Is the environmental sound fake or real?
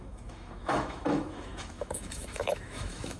fake